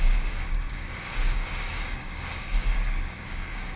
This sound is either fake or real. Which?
fake